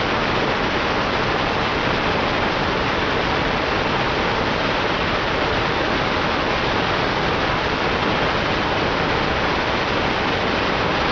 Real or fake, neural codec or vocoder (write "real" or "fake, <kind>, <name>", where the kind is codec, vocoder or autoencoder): real